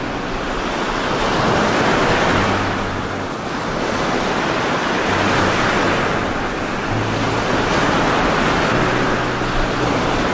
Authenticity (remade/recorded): recorded